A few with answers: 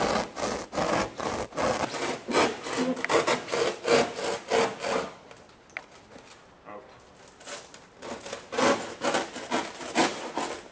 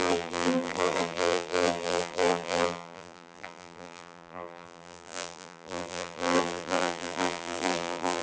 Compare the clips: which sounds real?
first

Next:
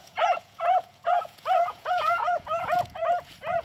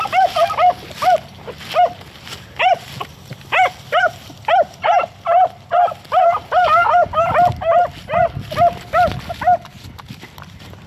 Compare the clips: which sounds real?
second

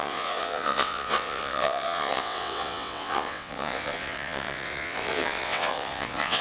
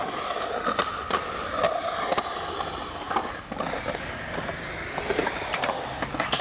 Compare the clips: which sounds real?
second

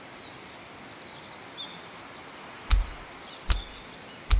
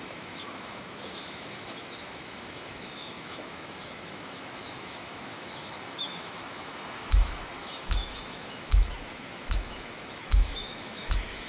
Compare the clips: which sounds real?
first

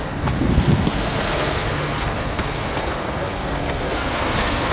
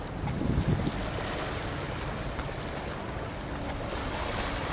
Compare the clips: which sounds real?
second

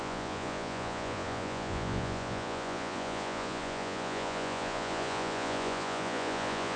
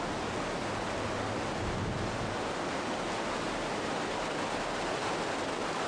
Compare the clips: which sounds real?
second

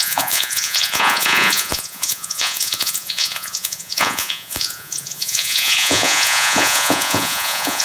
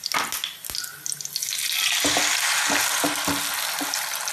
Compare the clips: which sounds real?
second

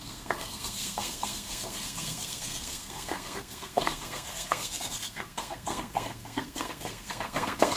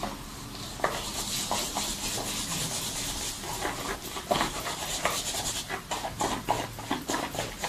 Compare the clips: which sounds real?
second